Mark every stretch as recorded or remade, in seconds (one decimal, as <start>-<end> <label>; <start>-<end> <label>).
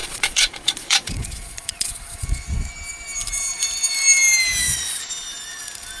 0.0-2.7 remade; 2.7-4.6 recorded; 4.6-5.1 remade; 5.1-6.0 recorded